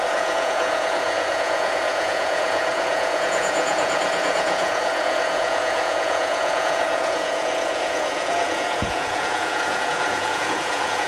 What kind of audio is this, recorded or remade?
remade